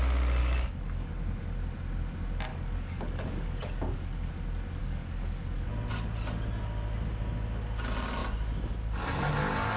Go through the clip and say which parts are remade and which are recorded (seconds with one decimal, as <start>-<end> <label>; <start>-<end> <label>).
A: 0.0-0.4 recorded; 0.4-1.1 remade; 1.1-2.5 recorded; 2.5-4.3 remade; 4.3-4.8 recorded; 4.8-5.7 remade; 5.7-9.8 recorded